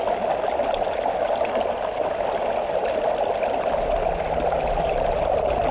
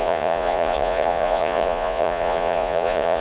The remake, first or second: second